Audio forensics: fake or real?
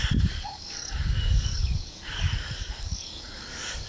fake